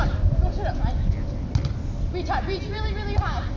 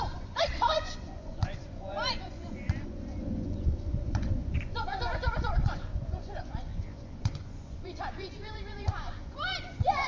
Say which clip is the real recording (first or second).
first